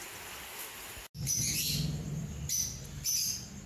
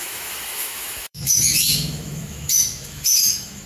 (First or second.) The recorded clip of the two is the first